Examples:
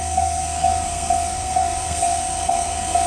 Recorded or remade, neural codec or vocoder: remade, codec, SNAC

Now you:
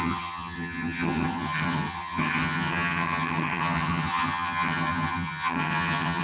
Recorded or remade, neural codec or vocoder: remade, vocoder, HiFi-GAN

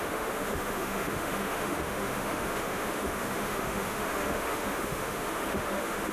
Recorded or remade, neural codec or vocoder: remade, autoencoder, DAC-VAE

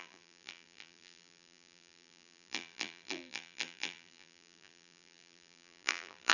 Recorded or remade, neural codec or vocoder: remade, vocoder, BigVGAN v2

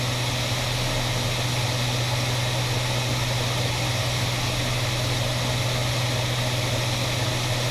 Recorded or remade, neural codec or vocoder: recorded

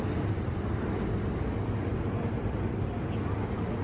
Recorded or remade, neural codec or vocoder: recorded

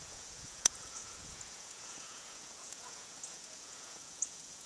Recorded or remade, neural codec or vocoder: remade, vocoder, Vocos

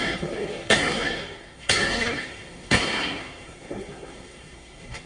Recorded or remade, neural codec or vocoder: remade, codec, SNAC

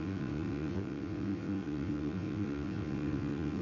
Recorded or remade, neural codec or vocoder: remade, vocoder, WaveNeXt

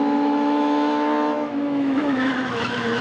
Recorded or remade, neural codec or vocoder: remade, autoencoder, DAC-VAE